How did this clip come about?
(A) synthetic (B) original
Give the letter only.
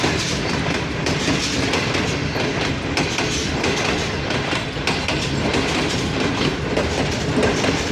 B